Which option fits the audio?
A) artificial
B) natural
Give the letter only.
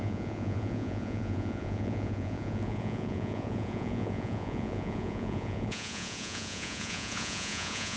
A